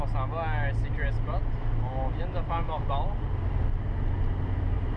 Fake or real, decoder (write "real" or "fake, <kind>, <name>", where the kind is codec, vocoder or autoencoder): real